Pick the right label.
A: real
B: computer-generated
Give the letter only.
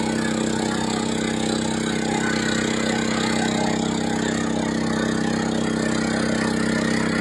A